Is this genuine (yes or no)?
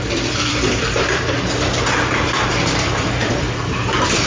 no